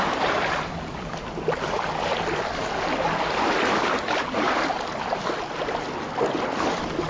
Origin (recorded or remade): recorded